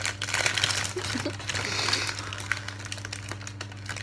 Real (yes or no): yes